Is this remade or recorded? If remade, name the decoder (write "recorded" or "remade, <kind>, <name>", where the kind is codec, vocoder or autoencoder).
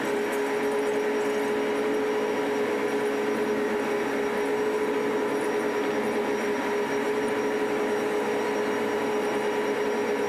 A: recorded